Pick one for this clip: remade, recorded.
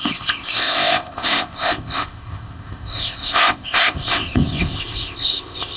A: remade